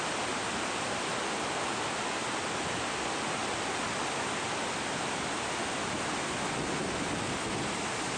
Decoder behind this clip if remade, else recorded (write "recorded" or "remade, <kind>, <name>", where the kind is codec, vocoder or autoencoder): recorded